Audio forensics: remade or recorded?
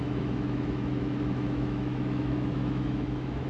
remade